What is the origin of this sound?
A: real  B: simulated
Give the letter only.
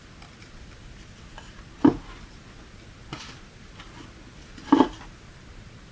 A